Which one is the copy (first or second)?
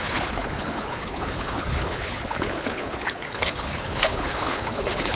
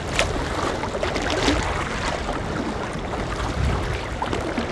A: first